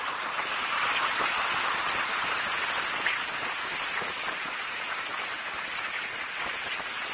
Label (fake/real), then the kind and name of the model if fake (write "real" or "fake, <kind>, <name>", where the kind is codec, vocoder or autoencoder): fake, vocoder, BigVGAN v2